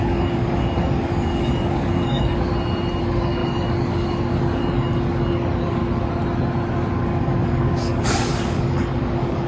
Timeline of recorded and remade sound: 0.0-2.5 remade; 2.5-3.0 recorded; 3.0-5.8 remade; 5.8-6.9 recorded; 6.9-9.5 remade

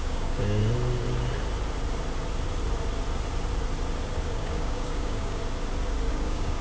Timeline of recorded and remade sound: 0.0-0.6 remade; 0.6-4.3 recorded; 4.3-5.4 remade; 5.4-6.1 recorded; 6.1-6.6 remade

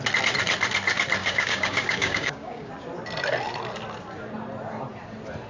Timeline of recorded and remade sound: 0.0-1.2 recorded; 1.2-2.7 remade; 2.7-5.5 recorded

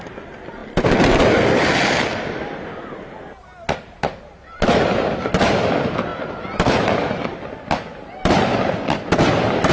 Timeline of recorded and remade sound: 0.0-9.7 recorded

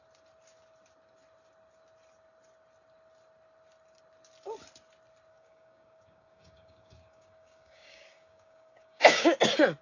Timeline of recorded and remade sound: 0.0-5.3 recorded; 5.3-9.4 remade; 9.4-9.8 recorded

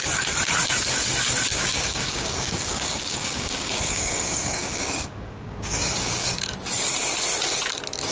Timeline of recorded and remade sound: 0.0-1.5 recorded; 1.5-6.4 remade; 6.4-8.1 recorded